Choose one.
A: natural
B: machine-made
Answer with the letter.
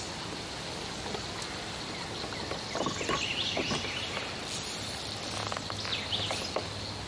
A